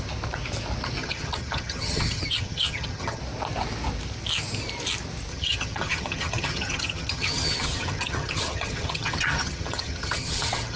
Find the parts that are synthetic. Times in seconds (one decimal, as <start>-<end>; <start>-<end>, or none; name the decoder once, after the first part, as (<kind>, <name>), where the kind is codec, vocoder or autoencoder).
1.0-3.2 (vocoder, HiFi-GAN); 5.3-10.8